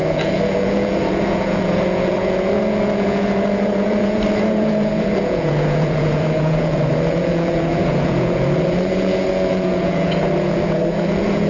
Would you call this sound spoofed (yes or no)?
yes